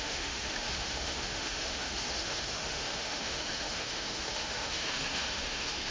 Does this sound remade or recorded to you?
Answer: remade